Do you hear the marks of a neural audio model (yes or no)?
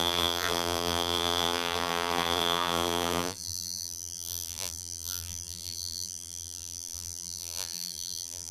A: yes